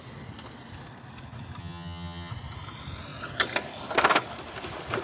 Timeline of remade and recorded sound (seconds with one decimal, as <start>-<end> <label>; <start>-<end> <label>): 0.0-1.6 recorded; 1.6-2.3 remade; 2.3-5.0 recorded